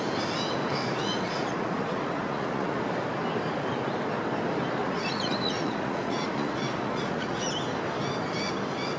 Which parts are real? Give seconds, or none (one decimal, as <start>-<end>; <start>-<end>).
0.0-0.8; 2.9-4.8; 7.5-9.0